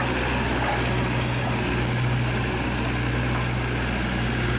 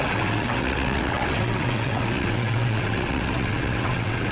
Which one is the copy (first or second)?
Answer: second